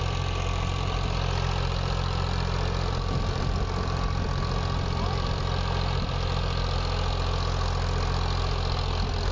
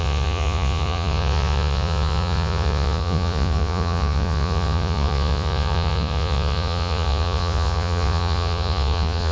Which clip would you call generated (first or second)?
second